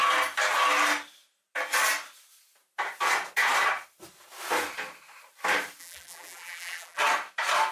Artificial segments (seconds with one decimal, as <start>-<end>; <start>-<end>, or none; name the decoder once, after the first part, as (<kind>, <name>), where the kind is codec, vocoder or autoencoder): 5.8-7.0 (vocoder, BigVGAN v2)